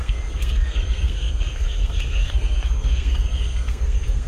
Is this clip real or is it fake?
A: fake